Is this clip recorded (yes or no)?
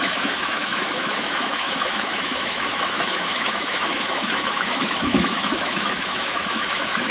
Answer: no